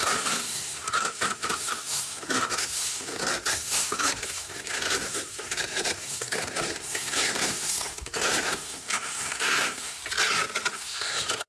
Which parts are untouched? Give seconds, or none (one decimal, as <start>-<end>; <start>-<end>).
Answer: 10.0-10.7